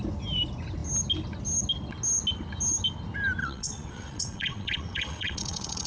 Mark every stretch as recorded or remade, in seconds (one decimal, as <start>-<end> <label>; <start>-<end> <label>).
0.0-3.4 recorded; 3.4-5.9 remade